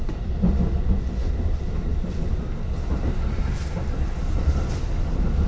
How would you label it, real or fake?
real